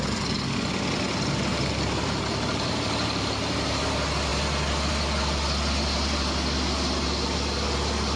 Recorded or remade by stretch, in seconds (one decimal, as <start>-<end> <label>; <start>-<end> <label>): 0.0-1.5 recorded; 1.5-3.8 remade; 3.8-8.2 recorded